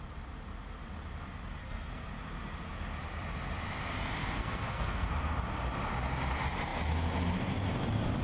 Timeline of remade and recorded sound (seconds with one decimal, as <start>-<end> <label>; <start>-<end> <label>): 0.0-1.6 recorded; 1.6-2.1 remade; 2.1-4.2 recorded; 4.2-5.1 remade; 5.1-8.2 recorded